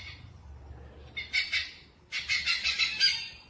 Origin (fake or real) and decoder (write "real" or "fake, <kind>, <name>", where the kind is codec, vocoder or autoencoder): real